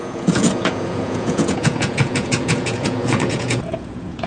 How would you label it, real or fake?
fake